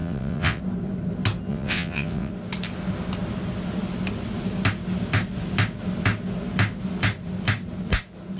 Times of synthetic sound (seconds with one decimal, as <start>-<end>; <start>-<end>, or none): 0.0-0.6; 1.5-2.3